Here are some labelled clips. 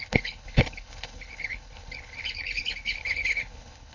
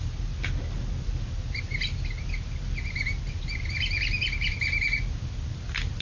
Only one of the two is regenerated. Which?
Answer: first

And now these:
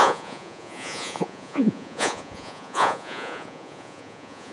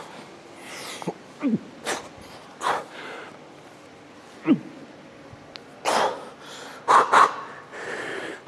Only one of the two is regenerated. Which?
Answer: first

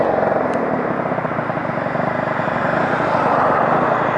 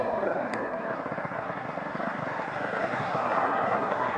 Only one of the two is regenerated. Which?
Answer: second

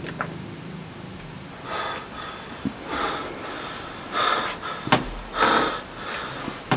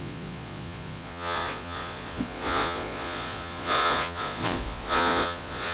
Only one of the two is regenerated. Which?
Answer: second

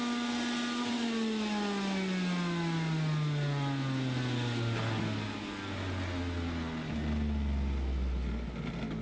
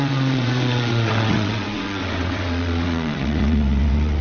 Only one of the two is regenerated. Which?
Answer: second